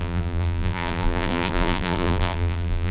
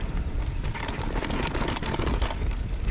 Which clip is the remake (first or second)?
first